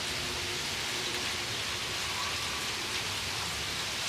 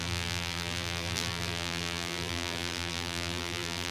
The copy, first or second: second